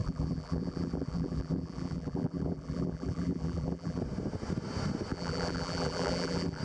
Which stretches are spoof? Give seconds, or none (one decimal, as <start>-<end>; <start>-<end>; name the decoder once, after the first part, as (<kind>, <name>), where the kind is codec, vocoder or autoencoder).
0.0-4.0 (vocoder, BigVGAN v2); 5.1-6.6